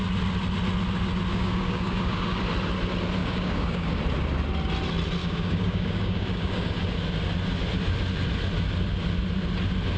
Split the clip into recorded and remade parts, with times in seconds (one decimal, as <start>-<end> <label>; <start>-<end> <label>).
0.0-1.3 recorded; 1.3-2.4 remade; 2.4-3.2 recorded; 3.2-4.0 remade; 4.0-5.2 recorded; 5.2-6.7 remade; 6.7-10.0 recorded